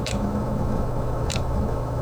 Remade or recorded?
remade